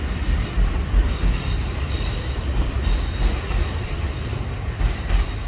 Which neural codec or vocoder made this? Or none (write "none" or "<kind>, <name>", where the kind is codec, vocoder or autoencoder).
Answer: vocoder, BigVGAN v2